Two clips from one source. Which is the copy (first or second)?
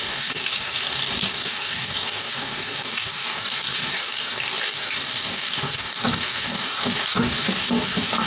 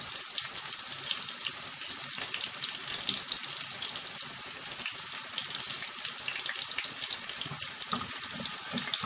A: first